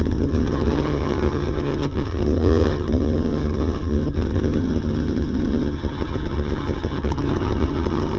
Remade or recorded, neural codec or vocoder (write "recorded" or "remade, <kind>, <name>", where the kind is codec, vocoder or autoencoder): remade, vocoder, HiFi-GAN